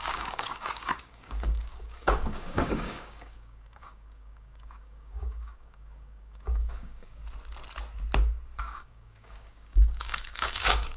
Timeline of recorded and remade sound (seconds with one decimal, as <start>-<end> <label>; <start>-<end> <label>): 0.0-7.2 remade; 7.2-8.6 recorded; 8.6-11.0 remade